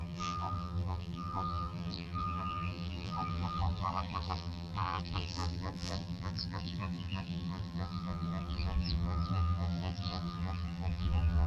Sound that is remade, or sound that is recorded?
remade